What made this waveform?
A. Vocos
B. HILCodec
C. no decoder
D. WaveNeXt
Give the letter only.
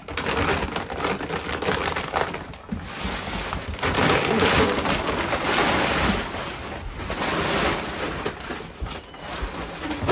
C